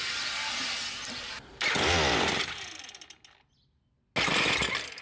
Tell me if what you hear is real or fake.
real